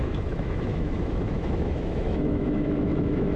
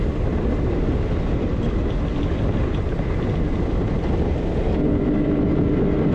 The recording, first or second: second